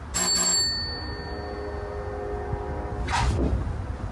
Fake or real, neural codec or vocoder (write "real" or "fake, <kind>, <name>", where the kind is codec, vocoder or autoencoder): real